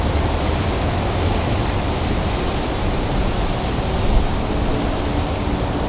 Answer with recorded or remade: recorded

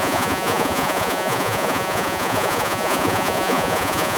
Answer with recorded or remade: remade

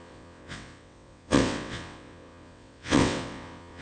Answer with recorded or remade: remade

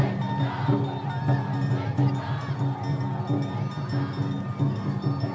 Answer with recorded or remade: recorded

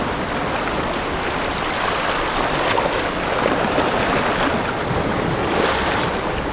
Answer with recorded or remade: recorded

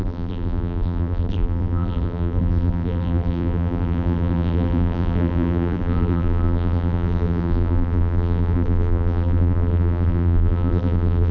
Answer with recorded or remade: remade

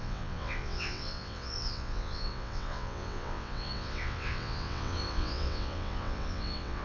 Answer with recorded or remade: remade